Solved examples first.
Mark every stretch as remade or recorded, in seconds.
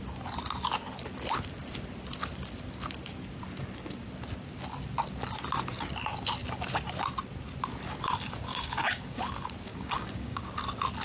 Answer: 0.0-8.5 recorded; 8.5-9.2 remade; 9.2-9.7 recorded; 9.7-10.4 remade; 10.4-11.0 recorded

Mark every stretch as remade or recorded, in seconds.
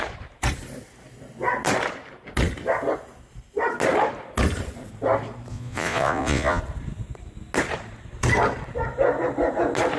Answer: 0.0-5.5 recorded; 5.5-6.6 remade; 6.6-10.0 recorded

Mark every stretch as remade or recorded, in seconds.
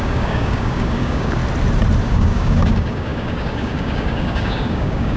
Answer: 0.0-1.4 remade; 1.4-2.0 recorded; 2.0-5.2 remade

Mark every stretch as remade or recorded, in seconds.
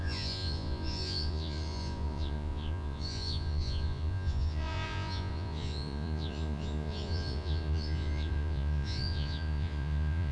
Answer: 0.0-10.3 remade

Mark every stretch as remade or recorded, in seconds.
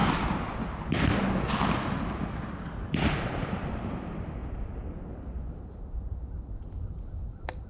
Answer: 0.0-7.7 recorded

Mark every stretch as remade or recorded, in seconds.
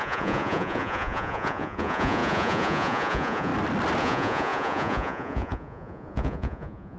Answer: 0.0-3.5 remade; 3.5-4.0 recorded; 4.0-7.0 remade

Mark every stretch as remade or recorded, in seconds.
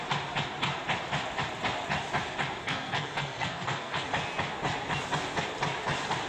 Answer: 0.0-2.6 recorded; 2.6-4.1 remade; 4.1-6.3 recorded